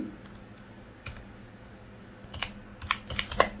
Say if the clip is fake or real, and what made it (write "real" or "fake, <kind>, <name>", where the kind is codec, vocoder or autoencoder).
real